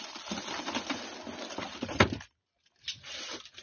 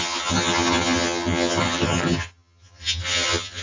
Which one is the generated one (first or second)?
second